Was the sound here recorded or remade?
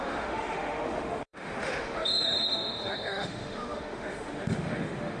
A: remade